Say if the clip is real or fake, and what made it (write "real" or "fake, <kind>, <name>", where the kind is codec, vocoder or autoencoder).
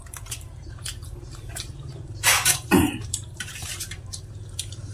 fake, vocoder, BigVGAN v2